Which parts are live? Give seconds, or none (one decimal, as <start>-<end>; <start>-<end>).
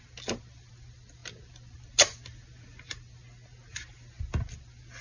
0.0-5.0